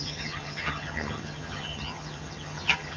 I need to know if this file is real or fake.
fake